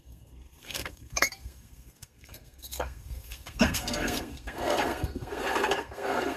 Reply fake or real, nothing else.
fake